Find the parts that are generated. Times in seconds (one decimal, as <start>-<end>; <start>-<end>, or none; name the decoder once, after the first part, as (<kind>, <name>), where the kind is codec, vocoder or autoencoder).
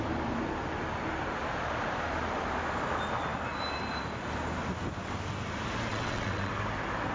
5.9-6.5 (vocoder, WaveNeXt)